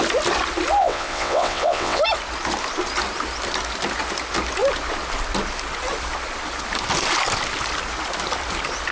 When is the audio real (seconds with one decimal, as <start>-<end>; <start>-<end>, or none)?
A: 0.0-0.8; 2.0-8.9